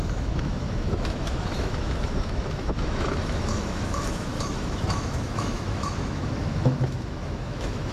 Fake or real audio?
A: fake